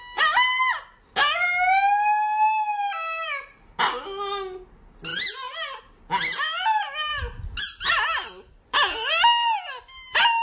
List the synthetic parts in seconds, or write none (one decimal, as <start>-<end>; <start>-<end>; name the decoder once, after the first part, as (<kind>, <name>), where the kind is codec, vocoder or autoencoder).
none